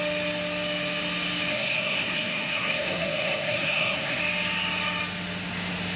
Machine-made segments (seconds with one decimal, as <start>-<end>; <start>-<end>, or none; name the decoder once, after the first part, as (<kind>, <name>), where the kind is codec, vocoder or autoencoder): 1.5-4.2 (codec, SNAC)